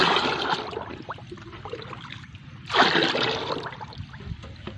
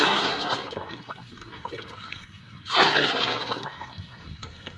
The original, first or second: first